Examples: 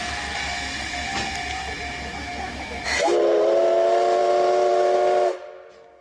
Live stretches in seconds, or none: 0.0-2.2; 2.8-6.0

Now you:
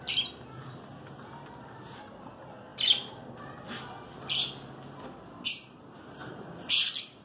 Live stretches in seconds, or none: 0.0-7.2

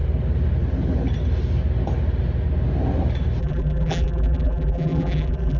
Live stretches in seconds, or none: 0.0-3.4

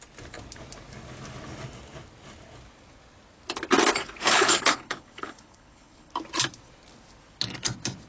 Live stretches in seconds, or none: 0.0-4.2; 6.1-8.1

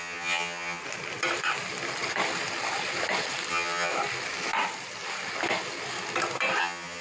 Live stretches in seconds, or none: 0.8-3.5; 3.9-6.6

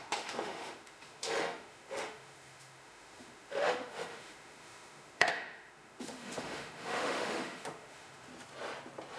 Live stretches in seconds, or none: 8.3-9.2

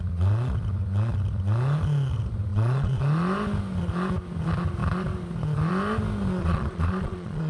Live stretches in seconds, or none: 0.0-2.5; 3.0-6.4